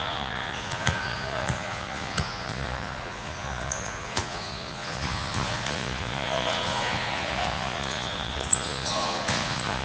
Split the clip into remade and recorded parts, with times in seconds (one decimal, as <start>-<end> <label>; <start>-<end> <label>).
0.0-9.8 remade